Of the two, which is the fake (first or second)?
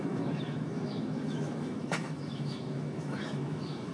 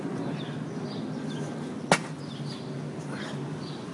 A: first